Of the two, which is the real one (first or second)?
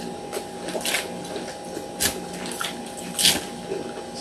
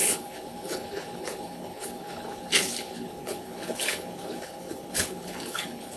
first